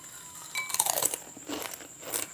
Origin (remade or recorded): recorded